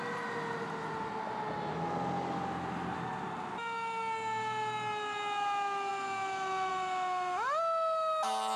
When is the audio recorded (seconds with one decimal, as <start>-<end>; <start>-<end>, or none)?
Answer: 0.0-8.6